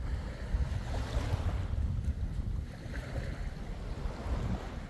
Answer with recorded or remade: recorded